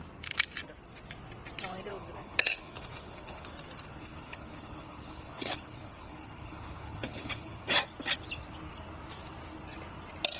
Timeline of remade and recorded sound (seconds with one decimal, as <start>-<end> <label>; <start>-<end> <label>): 0.0-1.9 recorded; 1.9-3.5 remade; 3.5-4.0 recorded; 4.0-7.7 remade; 7.7-10.4 recorded